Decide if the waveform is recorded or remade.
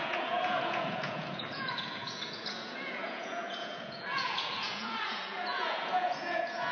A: remade